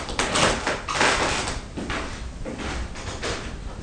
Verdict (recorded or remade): recorded